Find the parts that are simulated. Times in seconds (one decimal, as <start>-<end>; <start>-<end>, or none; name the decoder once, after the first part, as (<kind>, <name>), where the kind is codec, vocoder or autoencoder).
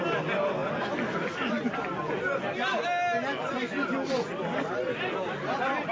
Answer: none